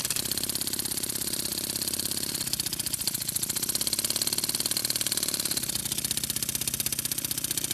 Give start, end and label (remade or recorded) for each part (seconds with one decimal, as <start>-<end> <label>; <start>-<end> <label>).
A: 0.0-1.5 recorded; 1.5-2.3 remade; 2.3-4.8 recorded; 4.8-5.8 remade; 5.8-7.7 recorded